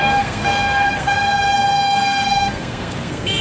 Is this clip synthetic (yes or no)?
yes